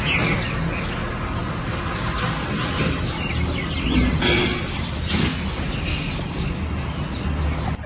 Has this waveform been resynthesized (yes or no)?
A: no